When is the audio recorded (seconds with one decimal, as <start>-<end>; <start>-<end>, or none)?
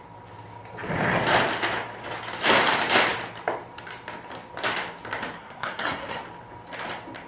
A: 0.0-5.4; 6.2-7.3